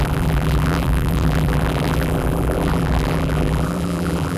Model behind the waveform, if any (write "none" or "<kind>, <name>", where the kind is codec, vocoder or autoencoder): vocoder, BigVGAN v2